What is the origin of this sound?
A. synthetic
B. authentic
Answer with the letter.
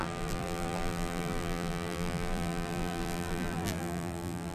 A